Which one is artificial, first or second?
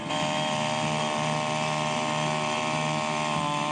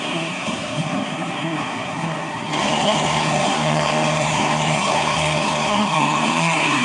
second